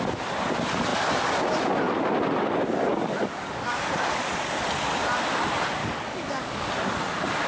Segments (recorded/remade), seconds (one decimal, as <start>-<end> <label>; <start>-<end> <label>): 0.0-2.9 recorded; 2.9-3.7 remade; 3.7-5.8 recorded; 5.8-6.7 remade; 6.7-7.5 recorded